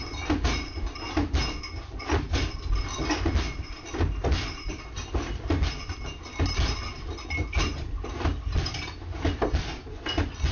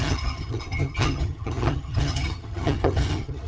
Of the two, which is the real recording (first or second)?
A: first